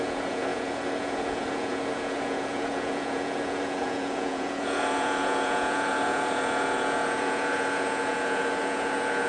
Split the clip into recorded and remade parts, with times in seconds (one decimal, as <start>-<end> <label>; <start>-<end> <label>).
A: 0.0-9.3 remade